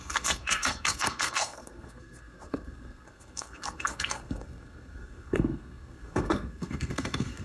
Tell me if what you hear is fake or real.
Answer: fake